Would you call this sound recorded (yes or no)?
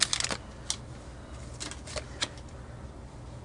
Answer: yes